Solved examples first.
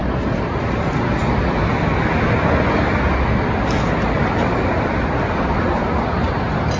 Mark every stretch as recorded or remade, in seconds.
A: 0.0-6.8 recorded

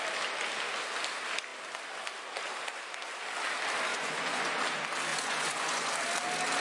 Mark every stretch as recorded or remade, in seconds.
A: 0.0-3.9 recorded; 3.9-4.5 remade; 4.5-5.1 recorded; 5.1-5.9 remade; 5.9-6.6 recorded

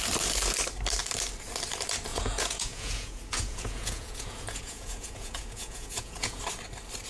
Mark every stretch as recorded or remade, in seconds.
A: 0.0-2.1 recorded; 2.1-6.4 remade; 6.4-7.1 recorded

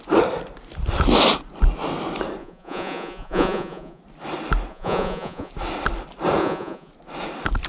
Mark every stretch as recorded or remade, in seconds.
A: 0.0-2.4 recorded; 2.4-4.0 remade; 4.0-4.7 recorded; 4.7-5.5 remade; 5.5-6.4 recorded; 6.4-6.9 remade; 6.9-7.7 recorded